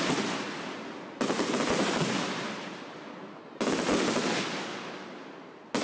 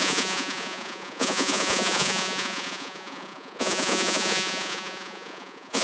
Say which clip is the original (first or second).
first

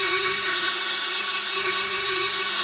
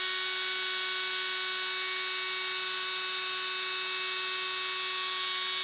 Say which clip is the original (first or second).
second